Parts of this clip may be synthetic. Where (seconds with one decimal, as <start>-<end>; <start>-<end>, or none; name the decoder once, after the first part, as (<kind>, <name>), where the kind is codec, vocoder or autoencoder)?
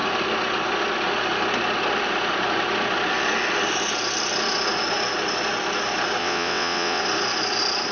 6.2-7.0 (vocoder, WaveNeXt)